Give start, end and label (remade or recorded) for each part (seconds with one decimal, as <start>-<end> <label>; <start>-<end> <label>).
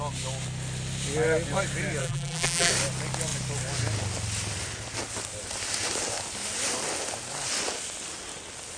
0.0-2.0 recorded; 2.0-2.7 remade; 2.7-8.8 recorded